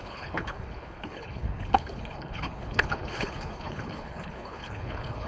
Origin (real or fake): fake